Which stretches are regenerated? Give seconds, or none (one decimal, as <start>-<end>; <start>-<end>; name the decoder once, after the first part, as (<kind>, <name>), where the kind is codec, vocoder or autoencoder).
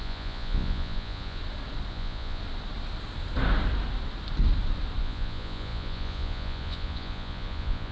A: 0.0-1.4 (vocoder, Vocos); 1.9-2.4; 5.0-7.9